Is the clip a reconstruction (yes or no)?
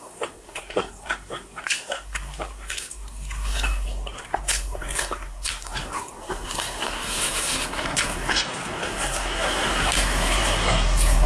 yes